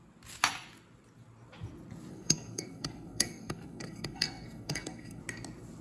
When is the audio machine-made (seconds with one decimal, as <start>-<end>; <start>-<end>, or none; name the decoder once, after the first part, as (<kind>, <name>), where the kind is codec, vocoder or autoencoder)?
2.1-5.2 (codec, SNAC)